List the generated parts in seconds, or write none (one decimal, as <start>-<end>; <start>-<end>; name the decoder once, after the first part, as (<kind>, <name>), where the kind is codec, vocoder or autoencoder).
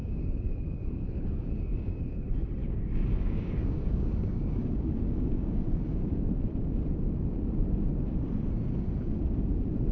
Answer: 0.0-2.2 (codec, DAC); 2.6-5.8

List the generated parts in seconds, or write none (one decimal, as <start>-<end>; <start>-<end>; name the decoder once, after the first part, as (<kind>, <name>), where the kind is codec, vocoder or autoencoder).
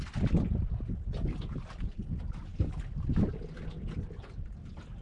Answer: none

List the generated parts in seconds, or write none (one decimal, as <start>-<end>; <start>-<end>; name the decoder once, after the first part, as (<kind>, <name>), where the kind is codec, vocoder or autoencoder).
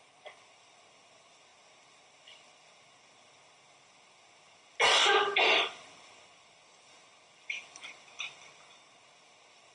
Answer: none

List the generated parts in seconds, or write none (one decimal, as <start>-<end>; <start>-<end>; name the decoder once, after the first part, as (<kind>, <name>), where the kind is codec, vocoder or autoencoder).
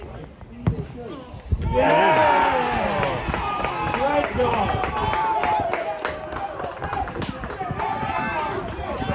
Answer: none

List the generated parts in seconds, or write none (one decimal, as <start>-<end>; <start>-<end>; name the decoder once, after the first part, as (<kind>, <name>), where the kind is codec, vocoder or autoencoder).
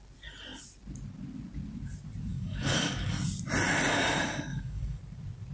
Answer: 2.3-3.1 (codec, DAC); 4.5-5.0